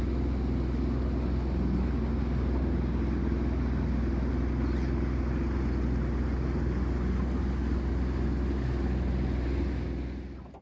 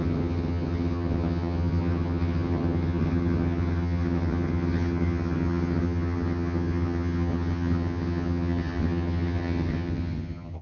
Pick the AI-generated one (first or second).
second